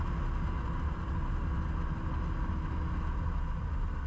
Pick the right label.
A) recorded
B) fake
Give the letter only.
A